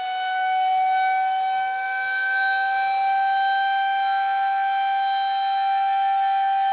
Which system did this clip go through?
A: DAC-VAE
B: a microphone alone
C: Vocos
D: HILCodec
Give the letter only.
B